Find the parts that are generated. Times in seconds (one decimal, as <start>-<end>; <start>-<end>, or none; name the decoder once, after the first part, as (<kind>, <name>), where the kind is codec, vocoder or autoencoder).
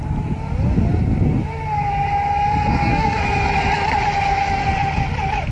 2.7-3.2 (codec, SNAC)